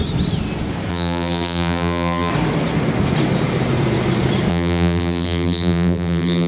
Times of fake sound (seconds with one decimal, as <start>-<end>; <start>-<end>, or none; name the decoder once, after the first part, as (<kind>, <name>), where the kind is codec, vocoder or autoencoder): 0.9-2.3 (vocoder, BigVGAN v2); 4.5-6.5